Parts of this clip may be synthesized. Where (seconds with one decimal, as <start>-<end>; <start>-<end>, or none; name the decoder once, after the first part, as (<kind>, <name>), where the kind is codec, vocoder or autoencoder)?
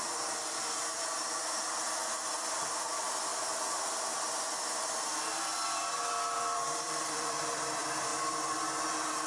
0.0-3.3 (vocoder, BigVGAN v2); 4.2-8.1; 8.8-9.3